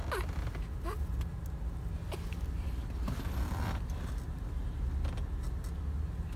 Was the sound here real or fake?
real